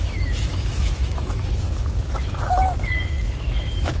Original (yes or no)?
no